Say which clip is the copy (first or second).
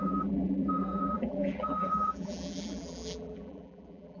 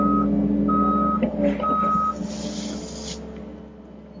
first